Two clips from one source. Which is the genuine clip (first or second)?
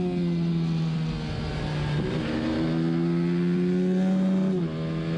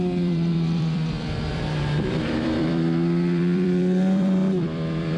first